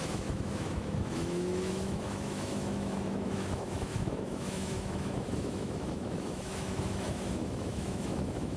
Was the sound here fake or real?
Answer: fake